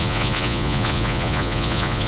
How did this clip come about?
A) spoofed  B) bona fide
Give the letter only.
A